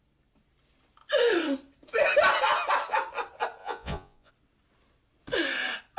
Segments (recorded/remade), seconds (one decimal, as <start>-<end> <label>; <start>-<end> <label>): 0.0-3.6 recorded; 3.6-4.3 remade; 4.3-6.0 recorded